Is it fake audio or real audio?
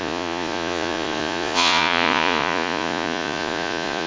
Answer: fake